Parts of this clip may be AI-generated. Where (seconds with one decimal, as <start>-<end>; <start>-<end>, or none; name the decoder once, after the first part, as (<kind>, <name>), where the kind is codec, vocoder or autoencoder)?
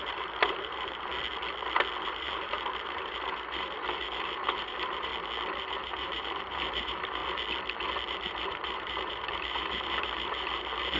0.0-1.1 (vocoder, BigVGAN v2); 2.0-5.1; 5.7-7.2; 8.1-11.0